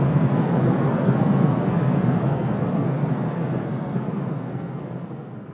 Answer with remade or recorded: remade